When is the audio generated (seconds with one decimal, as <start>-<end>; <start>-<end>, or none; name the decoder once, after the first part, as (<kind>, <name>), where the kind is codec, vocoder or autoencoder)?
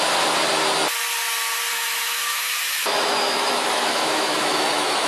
1.7-5.1 (autoencoder, DAC-VAE)